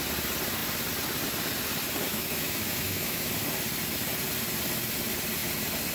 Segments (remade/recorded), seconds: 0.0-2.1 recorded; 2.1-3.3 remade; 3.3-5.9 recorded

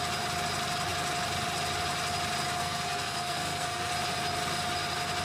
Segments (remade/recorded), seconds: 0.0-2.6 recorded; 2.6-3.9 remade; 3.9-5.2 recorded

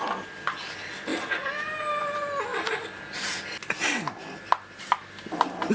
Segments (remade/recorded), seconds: 0.0-5.7 recorded

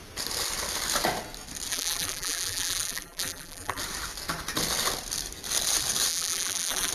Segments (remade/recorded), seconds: 0.0-1.7 recorded; 1.7-3.8 remade; 3.8-6.1 recorded; 6.1-6.9 remade